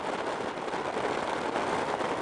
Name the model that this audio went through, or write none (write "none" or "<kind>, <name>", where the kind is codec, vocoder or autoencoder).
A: none